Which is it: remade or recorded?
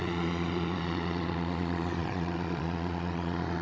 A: remade